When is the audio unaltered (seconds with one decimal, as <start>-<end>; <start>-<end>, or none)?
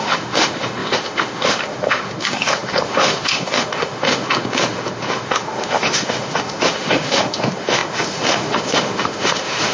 none